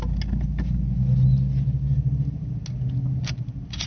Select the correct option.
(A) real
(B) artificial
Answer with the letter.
A